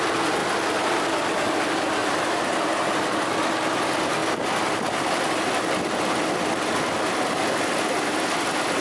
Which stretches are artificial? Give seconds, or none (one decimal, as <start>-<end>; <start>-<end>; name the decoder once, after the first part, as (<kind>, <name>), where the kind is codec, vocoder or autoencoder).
2.0-2.5 (vocoder, BigVGAN v2)

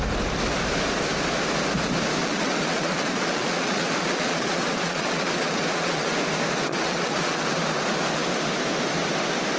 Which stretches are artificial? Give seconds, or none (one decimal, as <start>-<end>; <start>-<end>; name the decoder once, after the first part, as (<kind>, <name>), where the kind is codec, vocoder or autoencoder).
2.2-6.1 (vocoder, Vocos); 6.7-7.4

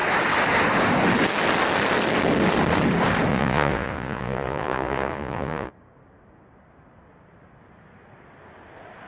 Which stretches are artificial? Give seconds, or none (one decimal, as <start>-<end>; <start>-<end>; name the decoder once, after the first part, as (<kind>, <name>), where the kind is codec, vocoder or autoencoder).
3.3-5.7 (vocoder, Vocos)

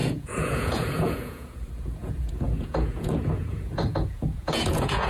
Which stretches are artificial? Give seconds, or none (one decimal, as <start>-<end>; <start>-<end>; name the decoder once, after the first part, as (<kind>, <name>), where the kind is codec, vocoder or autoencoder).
0.0-5.1 (vocoder, Vocos)

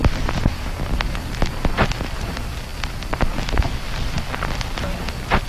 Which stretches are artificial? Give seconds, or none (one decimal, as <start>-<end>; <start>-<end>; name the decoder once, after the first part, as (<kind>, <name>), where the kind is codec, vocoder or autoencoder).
none

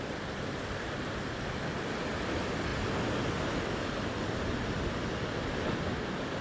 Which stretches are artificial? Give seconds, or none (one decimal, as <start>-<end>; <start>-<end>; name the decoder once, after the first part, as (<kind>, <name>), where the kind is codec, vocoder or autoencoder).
none